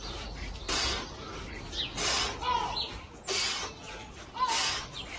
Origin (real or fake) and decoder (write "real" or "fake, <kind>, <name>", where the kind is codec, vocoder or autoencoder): real